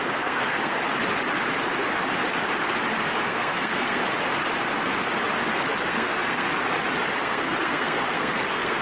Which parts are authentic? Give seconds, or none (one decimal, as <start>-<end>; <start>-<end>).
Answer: 0.8-3.2; 4.0-5.9; 6.5-7.2